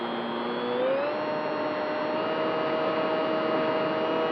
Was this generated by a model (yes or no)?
no